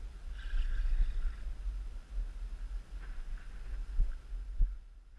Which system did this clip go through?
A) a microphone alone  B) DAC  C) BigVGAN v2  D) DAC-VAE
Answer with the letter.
A